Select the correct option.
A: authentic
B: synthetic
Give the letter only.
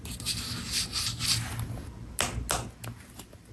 A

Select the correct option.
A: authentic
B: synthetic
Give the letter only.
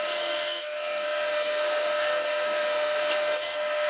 B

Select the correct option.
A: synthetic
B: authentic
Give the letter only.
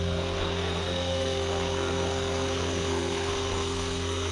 A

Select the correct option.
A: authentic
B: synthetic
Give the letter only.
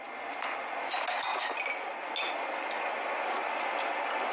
A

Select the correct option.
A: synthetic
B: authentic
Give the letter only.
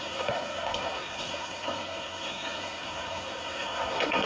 A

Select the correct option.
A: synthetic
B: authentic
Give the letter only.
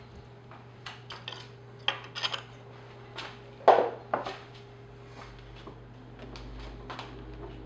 B